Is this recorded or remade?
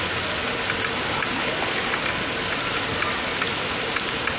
recorded